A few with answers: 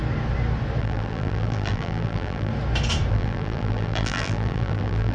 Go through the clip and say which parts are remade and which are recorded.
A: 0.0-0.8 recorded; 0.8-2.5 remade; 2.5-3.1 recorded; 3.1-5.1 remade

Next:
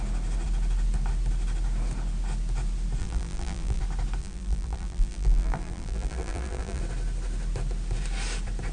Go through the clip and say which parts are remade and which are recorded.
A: 0.0-3.0 recorded; 3.0-3.8 remade; 3.8-4.2 recorded; 4.2-6.8 remade; 6.8-8.7 recorded

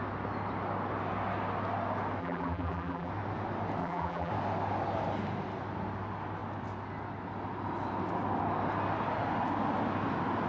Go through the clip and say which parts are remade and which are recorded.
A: 0.0-2.2 recorded; 2.2-3.1 remade; 3.1-3.8 recorded; 3.8-4.3 remade; 4.3-10.5 recorded